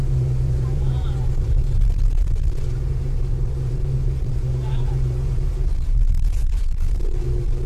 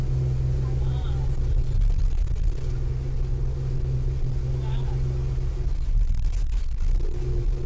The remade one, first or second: first